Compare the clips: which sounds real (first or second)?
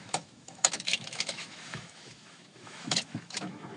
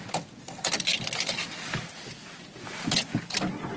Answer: second